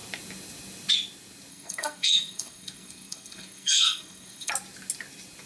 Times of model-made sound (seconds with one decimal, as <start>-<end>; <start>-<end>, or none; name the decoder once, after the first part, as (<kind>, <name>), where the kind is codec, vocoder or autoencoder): 1.5-4.5 (codec, SNAC)